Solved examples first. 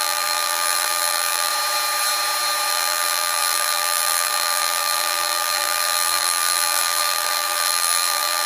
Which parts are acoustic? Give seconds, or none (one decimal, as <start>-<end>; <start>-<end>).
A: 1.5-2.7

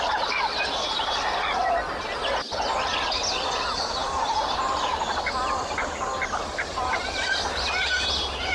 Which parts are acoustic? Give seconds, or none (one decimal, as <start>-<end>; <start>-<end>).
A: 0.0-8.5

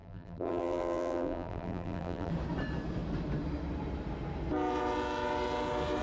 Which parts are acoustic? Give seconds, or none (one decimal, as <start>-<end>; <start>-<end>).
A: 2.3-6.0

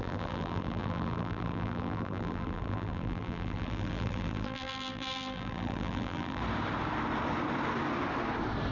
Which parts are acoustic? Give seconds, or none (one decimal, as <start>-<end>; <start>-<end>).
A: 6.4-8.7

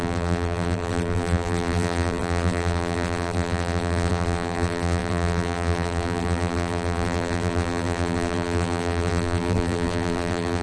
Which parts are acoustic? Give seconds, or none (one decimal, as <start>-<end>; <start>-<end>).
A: none

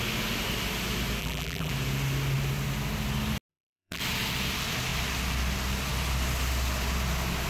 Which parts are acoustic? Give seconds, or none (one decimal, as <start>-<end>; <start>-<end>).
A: 0.0-1.2; 1.7-3.5; 4.0-7.5

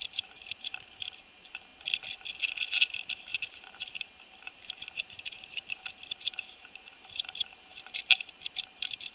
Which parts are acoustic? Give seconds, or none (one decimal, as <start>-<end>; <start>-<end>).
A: 1.7-2.6

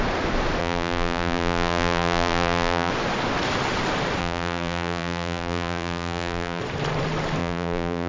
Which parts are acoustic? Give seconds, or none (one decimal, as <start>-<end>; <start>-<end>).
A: 0.0-0.6; 2.9-4.2; 6.6-7.4